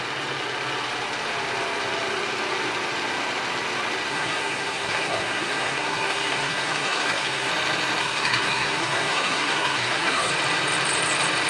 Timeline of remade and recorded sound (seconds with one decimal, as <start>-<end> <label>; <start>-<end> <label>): 0.0-4.1 recorded; 4.1-7.5 remade; 7.5-8.0 recorded; 8.0-10.3 remade; 10.3-11.5 recorded